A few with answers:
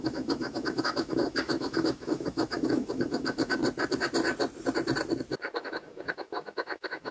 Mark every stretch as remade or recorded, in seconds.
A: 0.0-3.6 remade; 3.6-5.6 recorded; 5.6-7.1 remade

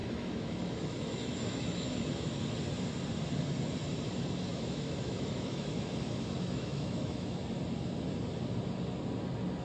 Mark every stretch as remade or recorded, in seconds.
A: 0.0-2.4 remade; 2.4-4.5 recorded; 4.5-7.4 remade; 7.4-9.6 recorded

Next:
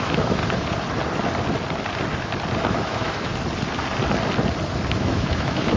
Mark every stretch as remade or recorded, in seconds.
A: 0.0-0.4 remade; 0.4-2.6 recorded; 2.6-3.3 remade; 3.3-5.0 recorded; 5.0-5.8 remade

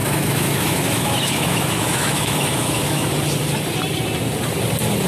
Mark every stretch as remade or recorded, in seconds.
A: 0.0-3.1 remade; 3.1-5.1 recorded

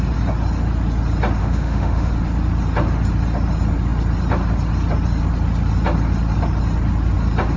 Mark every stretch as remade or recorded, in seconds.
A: 0.0-1.4 recorded; 1.4-2.1 remade; 2.1-7.6 recorded

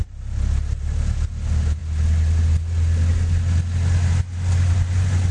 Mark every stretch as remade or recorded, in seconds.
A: 0.0-5.3 recorded